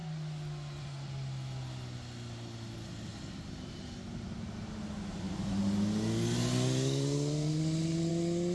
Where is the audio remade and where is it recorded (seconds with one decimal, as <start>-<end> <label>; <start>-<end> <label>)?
0.0-8.5 recorded